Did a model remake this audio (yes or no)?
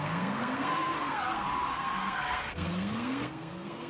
yes